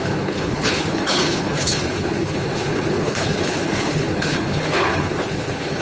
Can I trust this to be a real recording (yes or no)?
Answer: no